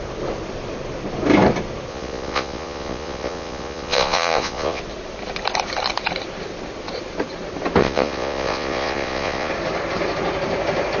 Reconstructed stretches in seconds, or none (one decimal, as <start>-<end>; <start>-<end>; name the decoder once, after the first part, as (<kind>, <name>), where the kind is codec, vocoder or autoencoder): 1.9-4.8 (vocoder, Vocos); 7.8-9.5